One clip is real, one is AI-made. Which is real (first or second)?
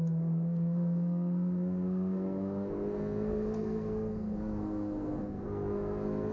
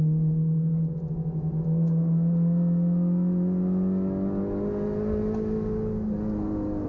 second